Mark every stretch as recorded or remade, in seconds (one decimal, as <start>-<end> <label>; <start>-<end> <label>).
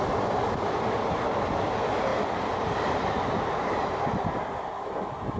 0.0-2.1 recorded; 2.1-5.4 remade